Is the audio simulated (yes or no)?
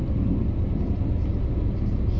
yes